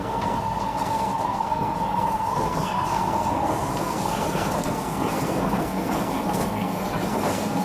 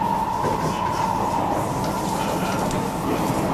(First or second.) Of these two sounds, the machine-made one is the first